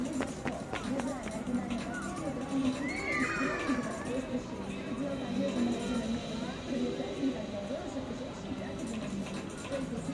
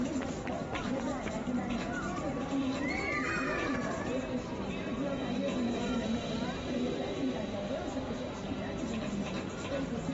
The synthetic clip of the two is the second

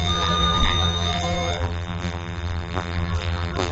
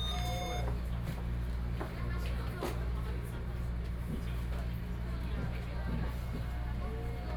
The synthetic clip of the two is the first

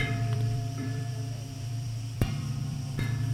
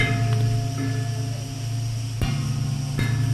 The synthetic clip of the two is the first